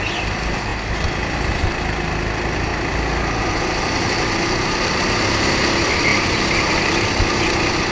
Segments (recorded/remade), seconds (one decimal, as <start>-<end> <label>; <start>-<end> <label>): 0.0-7.9 recorded